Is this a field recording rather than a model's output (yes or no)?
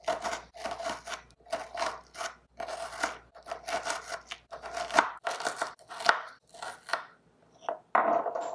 yes